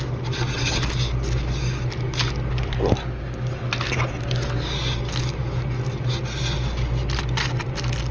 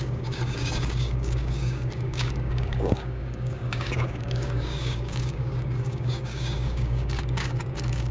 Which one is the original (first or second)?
first